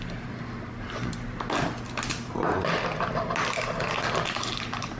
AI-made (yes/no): no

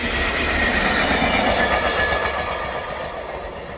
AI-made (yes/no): no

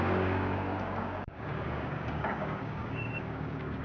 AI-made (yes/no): yes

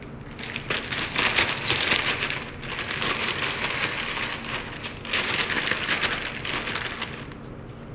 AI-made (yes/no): no